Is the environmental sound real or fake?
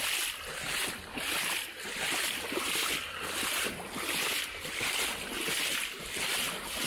real